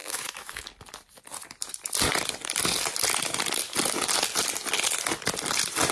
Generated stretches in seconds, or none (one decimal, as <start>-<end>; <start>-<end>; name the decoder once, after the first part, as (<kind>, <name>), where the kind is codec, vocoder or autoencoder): 0.0-0.7 (autoencoder, DAC-VAE)